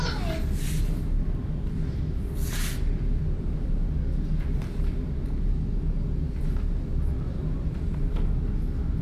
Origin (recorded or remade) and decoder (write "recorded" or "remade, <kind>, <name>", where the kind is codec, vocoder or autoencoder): recorded